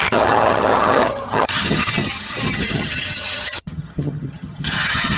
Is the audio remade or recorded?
remade